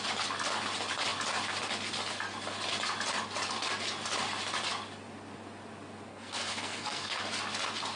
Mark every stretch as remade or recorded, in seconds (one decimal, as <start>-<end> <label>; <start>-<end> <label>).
0.0-6.1 recorded; 6.1-7.2 remade; 7.2-8.0 recorded